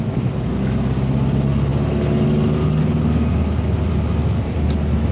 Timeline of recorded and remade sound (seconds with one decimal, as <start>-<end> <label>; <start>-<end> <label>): 0.0-5.1 recorded